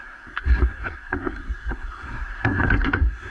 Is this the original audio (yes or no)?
no